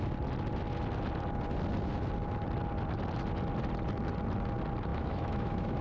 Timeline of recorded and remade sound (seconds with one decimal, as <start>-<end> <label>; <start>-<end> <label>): 0.0-4.9 recorded; 4.9-5.8 remade